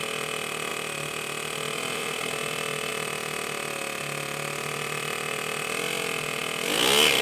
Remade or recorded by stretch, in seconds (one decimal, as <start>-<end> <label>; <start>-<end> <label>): 0.0-7.2 recorded